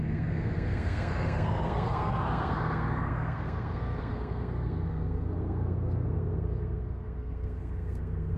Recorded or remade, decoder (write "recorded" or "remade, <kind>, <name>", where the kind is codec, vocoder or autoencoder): remade, codec, SNAC